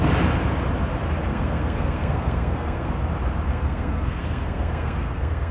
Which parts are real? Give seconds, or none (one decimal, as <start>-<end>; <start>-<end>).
0.0-1.3; 2.9-3.5